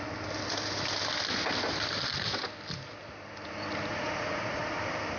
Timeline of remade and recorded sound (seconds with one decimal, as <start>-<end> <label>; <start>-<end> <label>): 0.0-3.9 recorded; 3.9-4.6 remade; 4.6-5.2 recorded